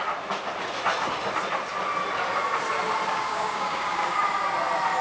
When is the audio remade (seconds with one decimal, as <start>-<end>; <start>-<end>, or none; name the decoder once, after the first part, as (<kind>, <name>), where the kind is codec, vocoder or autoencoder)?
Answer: 3.1-4.2 (codec, DAC)